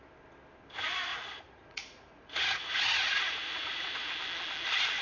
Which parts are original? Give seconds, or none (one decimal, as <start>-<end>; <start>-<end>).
0.0-1.1; 4.1-5.0